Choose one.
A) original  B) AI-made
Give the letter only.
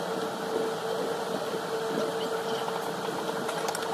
A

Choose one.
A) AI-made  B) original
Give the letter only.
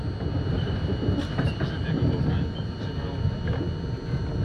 B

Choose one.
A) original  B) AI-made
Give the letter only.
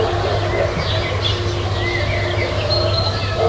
A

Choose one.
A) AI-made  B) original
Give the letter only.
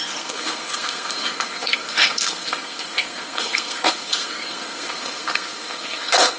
A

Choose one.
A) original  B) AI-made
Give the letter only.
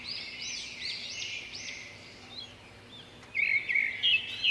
A